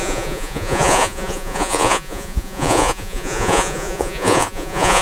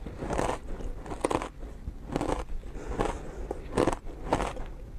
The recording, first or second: second